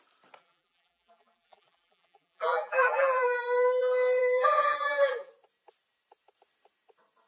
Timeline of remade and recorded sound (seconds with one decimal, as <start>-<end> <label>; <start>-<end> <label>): 0.0-0.4 recorded; 0.4-3.4 remade; 3.4-4.2 recorded; 4.2-5.3 remade; 5.3-7.3 recorded